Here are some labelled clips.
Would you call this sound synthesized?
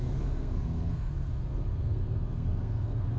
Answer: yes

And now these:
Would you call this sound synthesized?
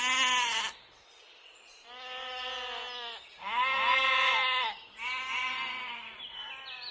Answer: no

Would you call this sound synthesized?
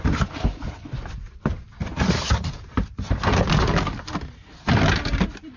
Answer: no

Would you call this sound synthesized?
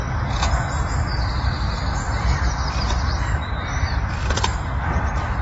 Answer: yes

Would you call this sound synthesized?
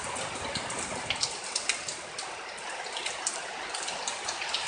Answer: no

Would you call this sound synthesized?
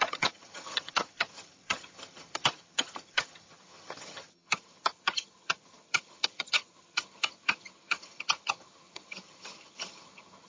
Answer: yes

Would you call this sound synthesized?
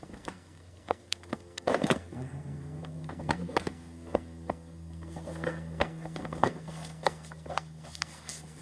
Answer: yes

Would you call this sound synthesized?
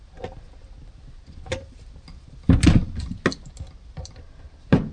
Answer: no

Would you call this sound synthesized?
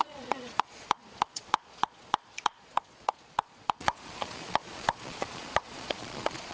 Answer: yes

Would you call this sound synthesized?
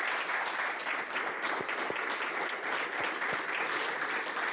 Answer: no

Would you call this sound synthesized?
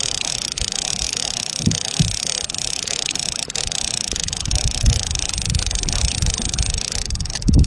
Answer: no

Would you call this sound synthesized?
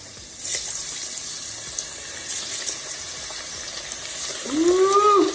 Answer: no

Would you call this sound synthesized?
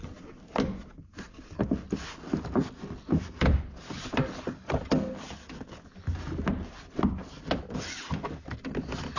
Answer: no